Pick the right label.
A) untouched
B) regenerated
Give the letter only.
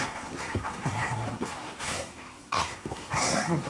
B